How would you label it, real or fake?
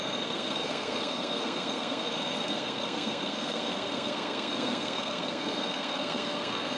fake